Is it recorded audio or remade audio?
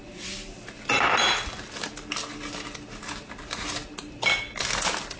recorded